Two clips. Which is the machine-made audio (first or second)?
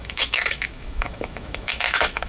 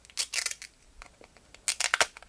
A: first